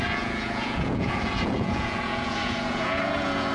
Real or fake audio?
fake